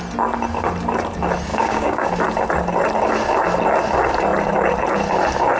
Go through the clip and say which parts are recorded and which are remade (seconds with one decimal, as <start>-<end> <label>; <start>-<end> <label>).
0.0-1.5 recorded; 1.5-2.1 remade; 2.1-5.6 recorded